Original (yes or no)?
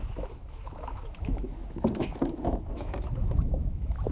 no